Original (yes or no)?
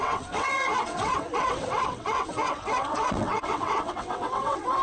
no